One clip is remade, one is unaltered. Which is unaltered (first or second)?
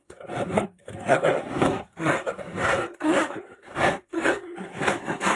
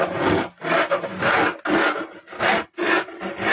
second